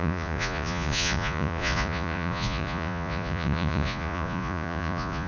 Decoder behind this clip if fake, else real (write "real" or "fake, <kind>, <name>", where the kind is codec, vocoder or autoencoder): fake, vocoder, Vocos